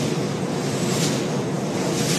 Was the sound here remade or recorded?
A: remade